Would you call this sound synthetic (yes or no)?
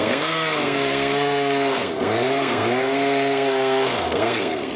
yes